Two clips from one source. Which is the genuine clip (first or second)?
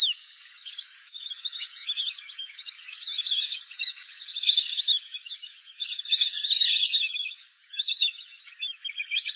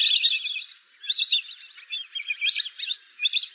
second